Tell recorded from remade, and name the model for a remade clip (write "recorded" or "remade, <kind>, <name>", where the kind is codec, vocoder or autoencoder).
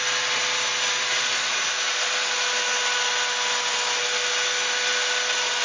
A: recorded